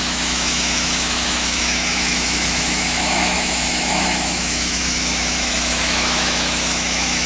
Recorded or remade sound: remade